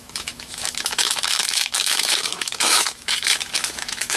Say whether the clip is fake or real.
fake